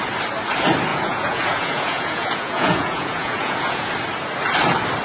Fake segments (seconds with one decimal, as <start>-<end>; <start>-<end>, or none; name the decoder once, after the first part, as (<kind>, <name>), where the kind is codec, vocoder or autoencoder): 0.9-3.9 (vocoder, Vocos)